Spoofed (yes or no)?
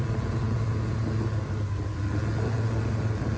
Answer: no